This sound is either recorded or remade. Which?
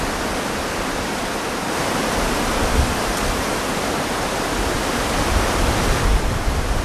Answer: recorded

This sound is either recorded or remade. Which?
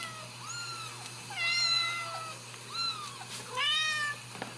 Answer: recorded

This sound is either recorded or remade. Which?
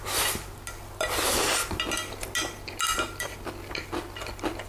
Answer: recorded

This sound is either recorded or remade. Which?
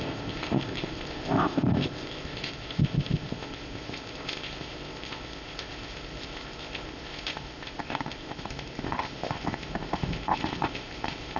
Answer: remade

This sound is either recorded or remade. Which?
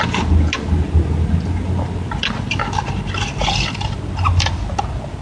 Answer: recorded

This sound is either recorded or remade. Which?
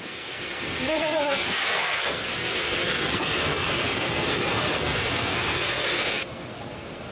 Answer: remade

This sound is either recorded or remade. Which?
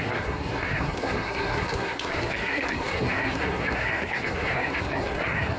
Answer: remade